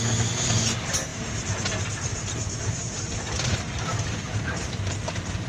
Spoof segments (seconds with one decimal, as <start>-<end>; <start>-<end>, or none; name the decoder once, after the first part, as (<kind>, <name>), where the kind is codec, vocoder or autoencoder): 1.1-1.6 (vocoder, BigVGAN v2); 2.1-5.5